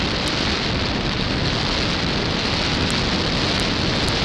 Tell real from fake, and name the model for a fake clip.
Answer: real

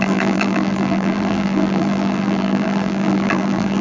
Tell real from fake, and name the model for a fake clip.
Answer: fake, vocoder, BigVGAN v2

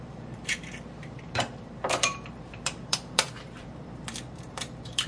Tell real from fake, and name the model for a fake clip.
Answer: fake, vocoder, BigVGAN v2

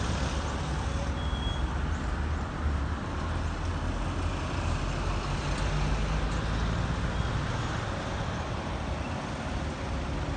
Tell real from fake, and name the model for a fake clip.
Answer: real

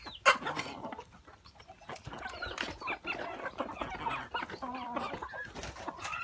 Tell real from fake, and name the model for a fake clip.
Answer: real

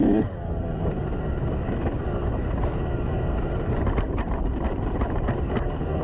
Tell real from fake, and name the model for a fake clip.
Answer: fake, vocoder, BigVGAN v2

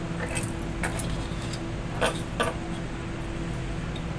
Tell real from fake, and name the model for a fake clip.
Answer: real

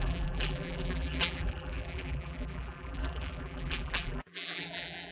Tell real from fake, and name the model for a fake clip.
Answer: fake, vocoder, BigVGAN v2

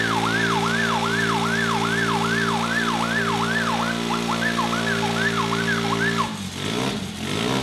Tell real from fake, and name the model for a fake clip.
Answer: real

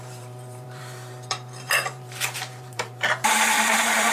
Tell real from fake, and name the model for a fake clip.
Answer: fake, vocoder, BigVGAN v2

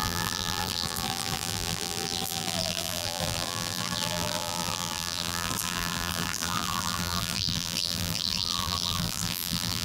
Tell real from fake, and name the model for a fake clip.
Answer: fake, vocoder, BigVGAN v2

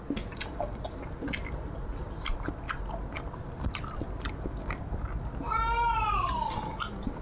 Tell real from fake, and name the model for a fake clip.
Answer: real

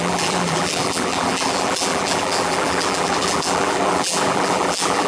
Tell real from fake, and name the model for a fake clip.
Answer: fake, vocoder, BigVGAN v2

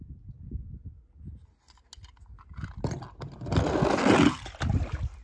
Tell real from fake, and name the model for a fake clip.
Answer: real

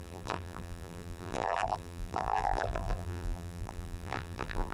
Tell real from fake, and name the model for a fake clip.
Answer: fake, vocoder, BigVGAN v2